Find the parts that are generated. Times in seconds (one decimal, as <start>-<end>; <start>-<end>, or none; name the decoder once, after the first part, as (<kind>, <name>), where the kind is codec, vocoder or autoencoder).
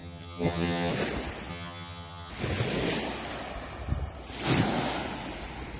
0.0-0.9 (vocoder, HiFi-GAN); 1.5-2.3